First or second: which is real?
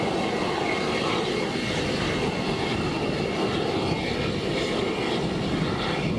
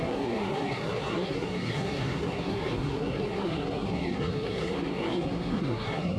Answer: first